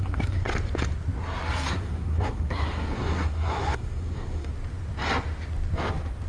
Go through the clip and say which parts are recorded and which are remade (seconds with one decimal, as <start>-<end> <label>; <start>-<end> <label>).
0.0-0.5 remade; 0.5-1.7 recorded; 1.7-4.5 remade; 4.5-6.3 recorded